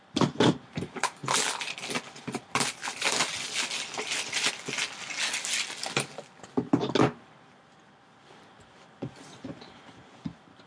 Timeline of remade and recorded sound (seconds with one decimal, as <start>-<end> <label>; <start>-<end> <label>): 0.0-1.2 remade; 1.2-2.2 recorded; 2.2-2.8 remade; 2.8-7.2 recorded; 7.2-10.7 remade